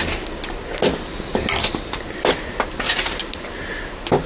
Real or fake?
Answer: real